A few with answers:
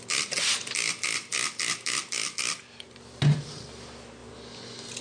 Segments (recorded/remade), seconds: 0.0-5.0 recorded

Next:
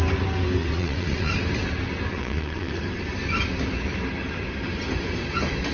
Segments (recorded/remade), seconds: 0.0-0.6 recorded; 0.6-1.3 remade; 1.3-2.1 recorded; 2.1-2.8 remade; 2.8-5.7 recorded

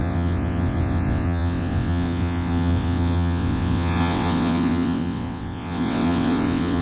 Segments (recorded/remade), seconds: 0.0-6.8 remade

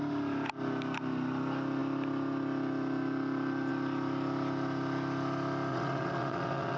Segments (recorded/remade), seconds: 0.0-5.7 recorded; 5.7-6.8 remade

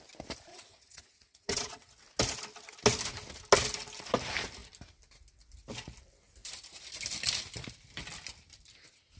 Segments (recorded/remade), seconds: 0.0-0.5 recorded; 0.5-1.9 remade; 1.9-9.2 recorded

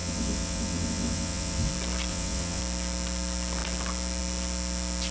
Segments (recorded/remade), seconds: 0.0-1.7 remade; 1.7-2.1 recorded; 2.1-2.6 remade; 2.6-5.1 recorded